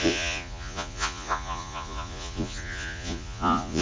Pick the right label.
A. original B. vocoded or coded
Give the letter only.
B